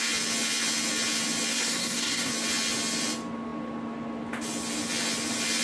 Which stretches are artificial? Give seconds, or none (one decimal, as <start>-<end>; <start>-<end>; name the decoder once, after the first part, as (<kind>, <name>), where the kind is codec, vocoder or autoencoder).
1.5-2.3 (codec, SNAC)